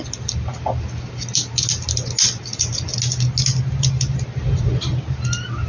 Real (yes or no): yes